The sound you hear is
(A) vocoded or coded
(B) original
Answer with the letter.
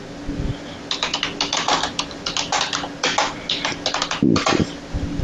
B